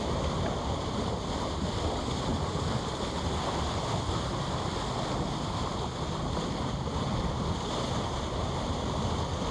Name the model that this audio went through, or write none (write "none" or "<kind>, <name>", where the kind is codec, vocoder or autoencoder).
none